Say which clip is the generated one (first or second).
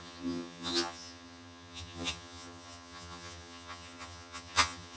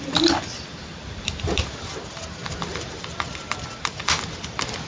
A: first